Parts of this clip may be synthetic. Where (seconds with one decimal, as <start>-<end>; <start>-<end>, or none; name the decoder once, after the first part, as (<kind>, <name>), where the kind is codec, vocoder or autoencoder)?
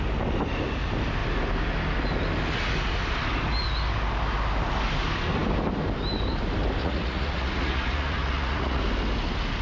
6.8-8.8 (vocoder, Vocos)